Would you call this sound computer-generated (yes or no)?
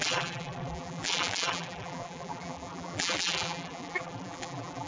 yes